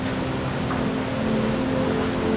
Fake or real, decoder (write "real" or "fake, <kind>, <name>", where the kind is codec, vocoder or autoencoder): real